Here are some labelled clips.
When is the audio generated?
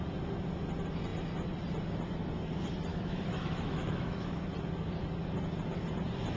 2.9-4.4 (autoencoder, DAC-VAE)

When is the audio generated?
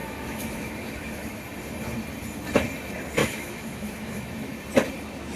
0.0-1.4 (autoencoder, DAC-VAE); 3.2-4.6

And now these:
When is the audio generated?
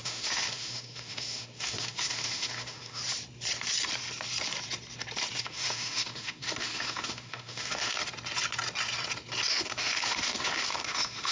0.0-3.0 (autoencoder, DAC-VAE); 5.4-8.0; 9.5-11.3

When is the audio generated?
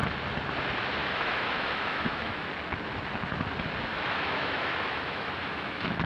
1.0-2.5 (autoencoder, DAC-VAE); 3.9-6.1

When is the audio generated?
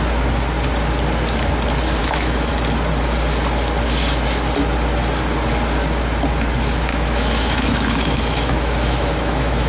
2.0-2.5 (autoencoder, DAC-VAE); 6.9-9.7